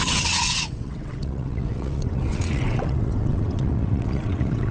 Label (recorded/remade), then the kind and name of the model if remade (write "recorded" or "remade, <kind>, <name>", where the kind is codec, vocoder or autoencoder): remade, vocoder, WaveNeXt